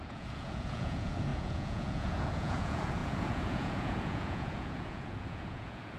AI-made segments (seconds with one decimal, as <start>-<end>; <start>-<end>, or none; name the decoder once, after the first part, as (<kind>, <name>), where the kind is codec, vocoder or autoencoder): 0.0-6.0 (vocoder, Vocos)